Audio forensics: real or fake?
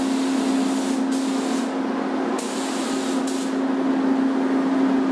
real